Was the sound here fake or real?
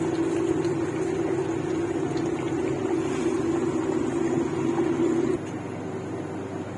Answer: real